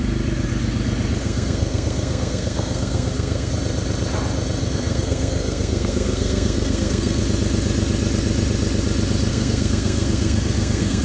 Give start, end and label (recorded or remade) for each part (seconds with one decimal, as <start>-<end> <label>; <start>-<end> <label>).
0.0-1.2 recorded; 1.2-3.5 remade; 3.5-4.6 recorded; 4.6-7.2 remade; 7.2-9.3 recorded; 9.3-11.0 remade